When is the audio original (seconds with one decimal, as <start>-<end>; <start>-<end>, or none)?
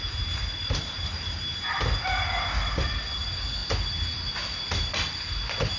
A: 0.0-5.8